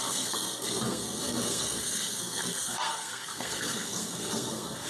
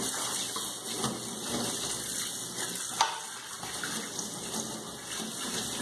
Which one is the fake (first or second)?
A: first